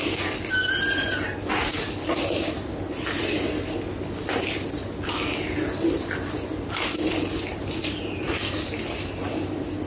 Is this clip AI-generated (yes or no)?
no